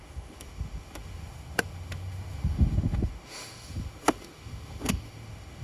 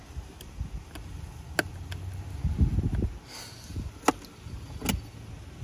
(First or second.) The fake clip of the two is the first